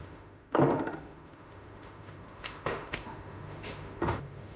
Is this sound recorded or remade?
remade